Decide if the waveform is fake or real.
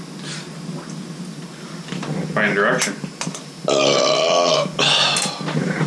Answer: real